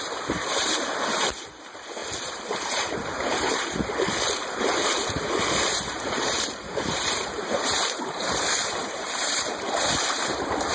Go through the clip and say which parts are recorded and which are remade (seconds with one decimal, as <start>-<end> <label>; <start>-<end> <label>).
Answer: 0.0-10.7 remade